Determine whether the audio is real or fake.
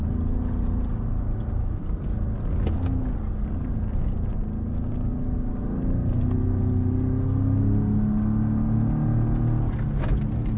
real